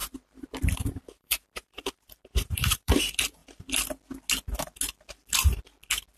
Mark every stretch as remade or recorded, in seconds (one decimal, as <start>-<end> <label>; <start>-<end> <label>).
0.0-3.0 remade; 3.0-6.2 recorded